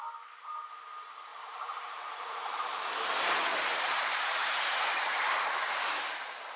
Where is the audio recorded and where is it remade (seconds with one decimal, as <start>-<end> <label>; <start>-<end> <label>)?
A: 0.0-1.3 recorded; 1.3-2.6 remade; 2.6-3.5 recorded; 3.5-5.4 remade; 5.4-6.6 recorded